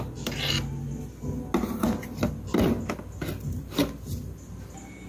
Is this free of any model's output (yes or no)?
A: yes